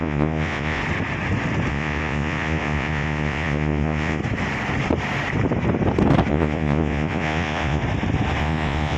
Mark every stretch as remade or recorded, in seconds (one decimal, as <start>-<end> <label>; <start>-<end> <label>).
0.0-0.8 remade; 0.8-1.7 recorded; 1.7-4.2 remade; 4.2-6.3 recorded; 6.3-7.8 remade; 7.8-8.4 recorded; 8.4-9.0 remade